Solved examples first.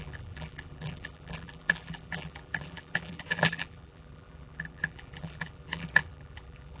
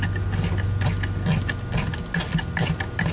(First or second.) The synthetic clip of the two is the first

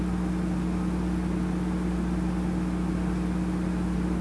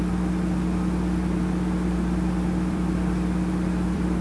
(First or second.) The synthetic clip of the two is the second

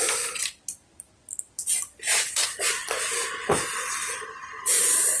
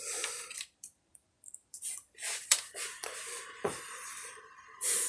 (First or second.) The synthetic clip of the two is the second